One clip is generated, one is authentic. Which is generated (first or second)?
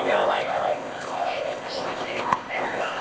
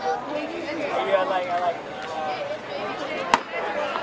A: first